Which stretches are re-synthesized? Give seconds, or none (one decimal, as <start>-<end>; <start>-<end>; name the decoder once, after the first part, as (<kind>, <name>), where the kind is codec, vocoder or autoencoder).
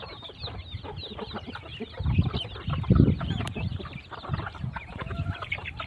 0.0-1.7 (vocoder, BigVGAN v2); 3.2-5.9